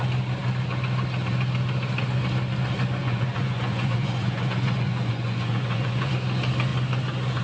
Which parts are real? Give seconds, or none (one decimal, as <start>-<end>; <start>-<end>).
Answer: 0.0-3.0; 6.1-7.4